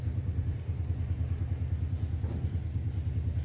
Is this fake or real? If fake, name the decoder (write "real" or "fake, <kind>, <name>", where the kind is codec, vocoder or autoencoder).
real